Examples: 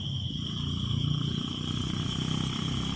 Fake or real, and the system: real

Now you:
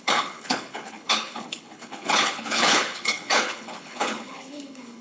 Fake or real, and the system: fake, codec, HILCodec